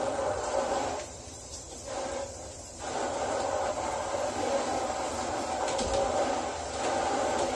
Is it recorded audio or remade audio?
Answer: remade